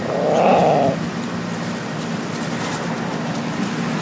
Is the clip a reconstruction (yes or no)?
no